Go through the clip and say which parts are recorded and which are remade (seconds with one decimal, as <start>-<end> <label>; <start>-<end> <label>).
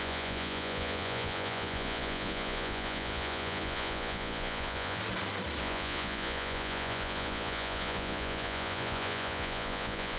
0.0-5.0 remade; 5.0-5.6 recorded; 5.6-10.2 remade